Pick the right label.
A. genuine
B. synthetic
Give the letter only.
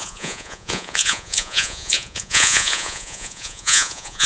B